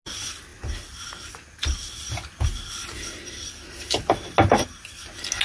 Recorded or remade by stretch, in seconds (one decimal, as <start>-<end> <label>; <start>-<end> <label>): 0.0-5.4 recorded